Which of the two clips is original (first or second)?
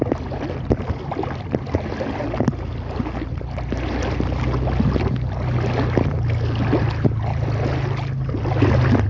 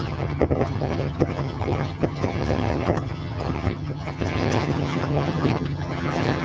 first